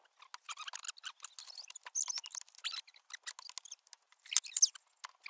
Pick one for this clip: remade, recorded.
recorded